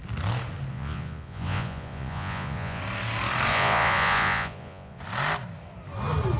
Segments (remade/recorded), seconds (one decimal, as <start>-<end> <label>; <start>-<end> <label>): 0.0-0.7 recorded; 0.7-2.8 remade; 2.8-3.5 recorded; 3.5-5.0 remade; 5.0-6.4 recorded

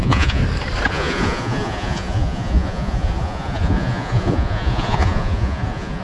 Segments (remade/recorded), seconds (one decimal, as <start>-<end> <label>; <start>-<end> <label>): 0.0-0.4 remade; 0.4-0.9 recorded; 0.9-6.0 remade